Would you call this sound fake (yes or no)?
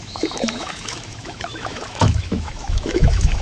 yes